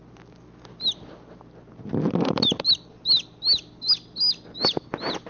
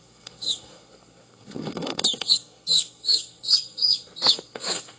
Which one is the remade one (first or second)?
second